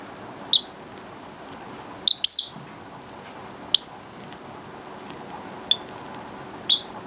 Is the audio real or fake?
real